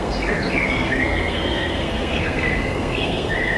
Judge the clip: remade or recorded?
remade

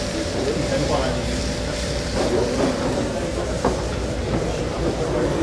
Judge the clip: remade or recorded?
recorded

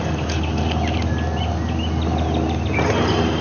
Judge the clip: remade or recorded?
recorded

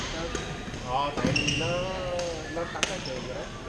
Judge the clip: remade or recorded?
recorded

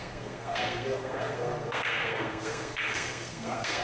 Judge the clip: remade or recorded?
remade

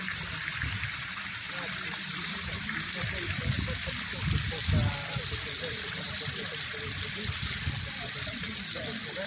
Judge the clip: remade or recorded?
recorded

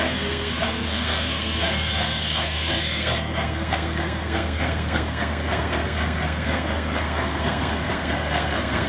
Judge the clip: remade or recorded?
remade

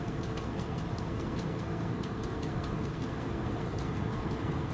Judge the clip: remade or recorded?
remade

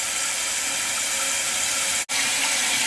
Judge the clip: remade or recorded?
recorded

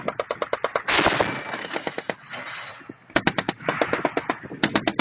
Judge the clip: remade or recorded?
recorded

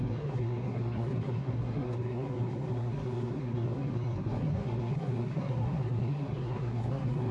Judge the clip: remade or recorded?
remade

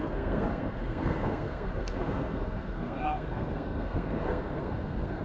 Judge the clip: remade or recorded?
remade